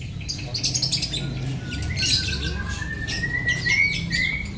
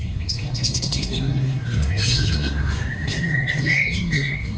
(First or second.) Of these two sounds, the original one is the first